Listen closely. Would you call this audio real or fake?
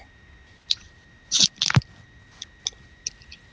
real